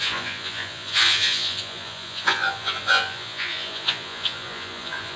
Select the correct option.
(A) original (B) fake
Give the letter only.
B